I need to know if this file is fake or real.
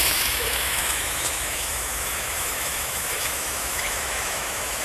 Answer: fake